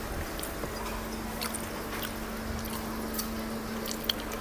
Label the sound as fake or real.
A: real